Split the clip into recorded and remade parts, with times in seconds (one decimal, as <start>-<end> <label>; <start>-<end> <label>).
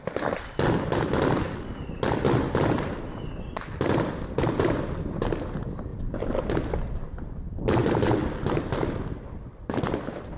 0.0-10.4 recorded